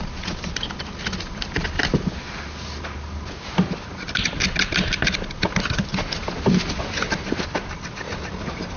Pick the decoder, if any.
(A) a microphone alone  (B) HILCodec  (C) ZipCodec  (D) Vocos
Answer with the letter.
A